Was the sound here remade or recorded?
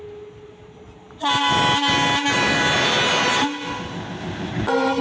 recorded